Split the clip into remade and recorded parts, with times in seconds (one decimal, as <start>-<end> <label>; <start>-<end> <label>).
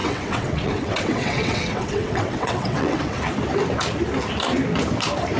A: 0.0-3.2 remade; 3.2-5.4 recorded